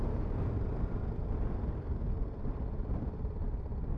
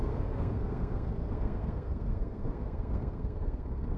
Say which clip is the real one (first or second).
first